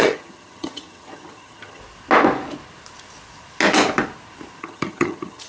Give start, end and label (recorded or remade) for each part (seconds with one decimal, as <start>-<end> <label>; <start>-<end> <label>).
0.0-1.8 remade; 1.8-4.6 recorded; 4.6-5.5 remade